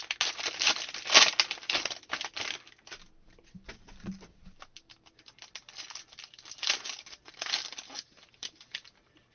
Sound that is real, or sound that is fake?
real